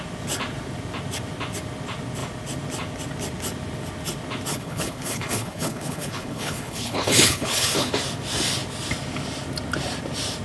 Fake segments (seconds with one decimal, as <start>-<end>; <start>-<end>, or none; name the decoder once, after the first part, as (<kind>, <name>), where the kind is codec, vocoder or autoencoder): 4.5-7.9 (codec, HILCodec)